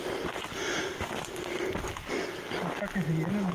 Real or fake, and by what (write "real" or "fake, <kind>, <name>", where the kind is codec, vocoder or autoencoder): real